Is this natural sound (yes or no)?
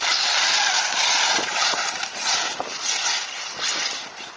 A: yes